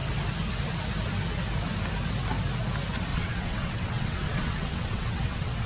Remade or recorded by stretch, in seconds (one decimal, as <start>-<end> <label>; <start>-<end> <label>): 0.0-3.1 recorded; 3.1-5.7 remade